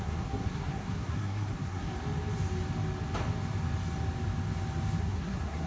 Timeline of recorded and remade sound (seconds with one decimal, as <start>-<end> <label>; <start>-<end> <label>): 0.0-1.9 remade; 1.9-5.0 recorded; 5.0-5.7 remade